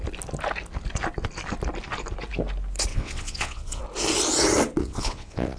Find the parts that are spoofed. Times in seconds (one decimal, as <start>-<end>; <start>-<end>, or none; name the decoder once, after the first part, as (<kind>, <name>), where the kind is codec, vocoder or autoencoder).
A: 2.9-3.8 (vocoder, WaveNeXt); 4.8-5.6